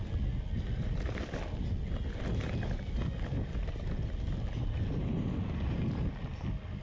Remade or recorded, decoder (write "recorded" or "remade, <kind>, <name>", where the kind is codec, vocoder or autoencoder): recorded